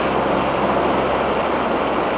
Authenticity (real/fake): real